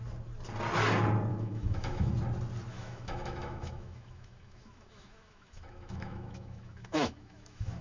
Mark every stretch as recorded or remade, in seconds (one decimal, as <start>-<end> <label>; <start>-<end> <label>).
0.0-1.3 recorded; 1.3-2.1 remade; 2.1-2.7 recorded; 2.7-7.8 remade

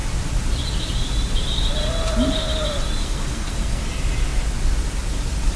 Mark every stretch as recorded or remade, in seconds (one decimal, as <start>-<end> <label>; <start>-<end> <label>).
0.0-3.0 recorded; 3.0-3.8 remade; 3.8-5.6 recorded

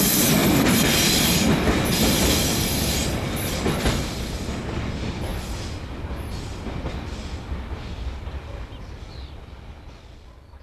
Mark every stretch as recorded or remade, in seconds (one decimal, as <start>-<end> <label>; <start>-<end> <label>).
0.0-0.4 recorded; 0.4-4.0 remade; 4.0-5.3 recorded; 5.3-6.3 remade; 6.3-10.6 recorded

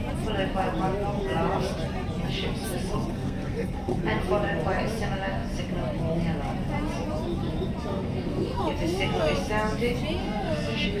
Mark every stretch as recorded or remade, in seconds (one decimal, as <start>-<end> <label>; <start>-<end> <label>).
0.0-2.9 recorded; 2.9-4.0 remade; 4.0-7.9 recorded; 7.9-8.6 remade; 8.6-10.2 recorded; 10.2-11.0 remade

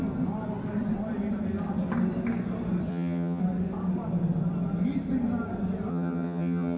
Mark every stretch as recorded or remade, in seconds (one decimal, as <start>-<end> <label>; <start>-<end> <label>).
0.0-2.9 recorded; 2.9-3.4 remade; 3.4-5.9 recorded; 5.9-6.8 remade

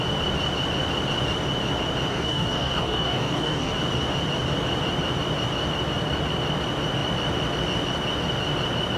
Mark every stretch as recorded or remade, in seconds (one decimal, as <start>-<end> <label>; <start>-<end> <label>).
0.0-2.1 recorded; 2.1-3.7 remade; 3.7-9.0 recorded

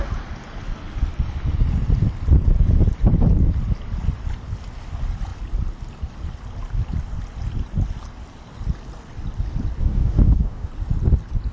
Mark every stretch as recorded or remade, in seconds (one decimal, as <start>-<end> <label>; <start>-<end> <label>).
0.0-9.8 recorded; 9.8-10.7 remade; 10.7-11.5 recorded